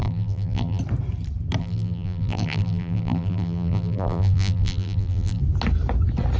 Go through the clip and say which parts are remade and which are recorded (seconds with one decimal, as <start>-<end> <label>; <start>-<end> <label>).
0.0-0.8 remade; 0.8-1.6 recorded; 1.6-5.4 remade; 5.4-6.4 recorded

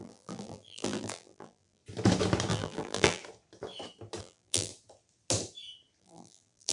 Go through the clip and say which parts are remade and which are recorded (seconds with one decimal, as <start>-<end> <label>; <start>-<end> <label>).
0.0-1.8 remade; 1.8-2.5 recorded; 2.5-3.2 remade; 3.2-4.2 recorded; 4.2-4.7 remade; 4.7-6.0 recorded; 6.0-6.7 remade

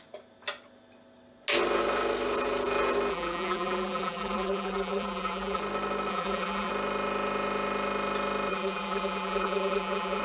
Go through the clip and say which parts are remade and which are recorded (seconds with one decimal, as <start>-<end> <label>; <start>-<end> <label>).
0.0-3.1 recorded; 3.1-5.6 remade; 5.6-6.1 recorded; 6.1-6.7 remade; 6.7-8.5 recorded; 8.5-10.2 remade

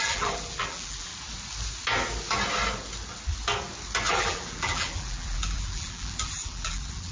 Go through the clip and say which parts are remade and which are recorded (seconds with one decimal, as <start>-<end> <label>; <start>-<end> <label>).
0.0-1.1 remade; 1.1-4.1 recorded; 4.1-7.1 remade

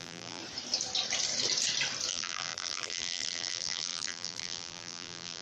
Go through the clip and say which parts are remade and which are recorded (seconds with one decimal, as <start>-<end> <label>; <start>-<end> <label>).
0.0-0.4 remade; 0.4-2.1 recorded; 2.1-5.4 remade

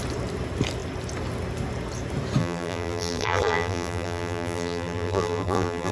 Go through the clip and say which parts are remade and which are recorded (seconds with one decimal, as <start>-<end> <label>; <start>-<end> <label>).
0.0-2.4 recorded; 2.4-5.9 remade

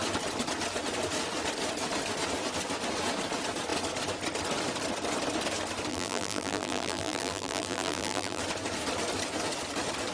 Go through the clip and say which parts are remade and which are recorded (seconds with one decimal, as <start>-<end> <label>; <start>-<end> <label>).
0.0-5.9 recorded; 5.9-8.4 remade; 8.4-10.1 recorded

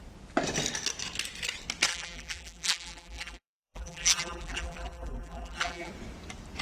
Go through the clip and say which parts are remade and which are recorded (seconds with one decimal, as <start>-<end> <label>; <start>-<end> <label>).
0.0-1.9 recorded; 1.9-5.9 remade; 5.9-6.6 recorded